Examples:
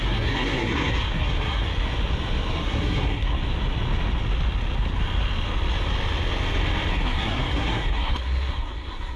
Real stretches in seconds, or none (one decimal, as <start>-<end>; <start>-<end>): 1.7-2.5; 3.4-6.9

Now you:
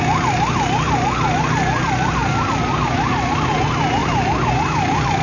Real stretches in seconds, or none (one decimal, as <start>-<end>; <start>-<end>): 0.0-2.2; 3.1-4.0; 4.5-5.2

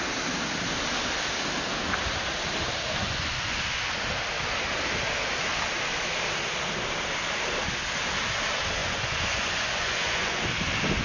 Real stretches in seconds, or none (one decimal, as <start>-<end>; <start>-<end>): 0.0-3.0; 3.6-8.8; 10.4-11.0